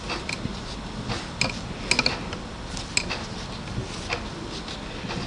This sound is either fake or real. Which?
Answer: real